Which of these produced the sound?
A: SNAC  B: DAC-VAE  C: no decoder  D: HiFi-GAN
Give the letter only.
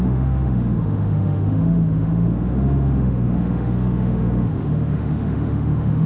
B